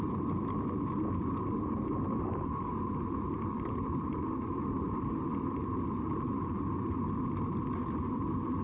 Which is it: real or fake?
real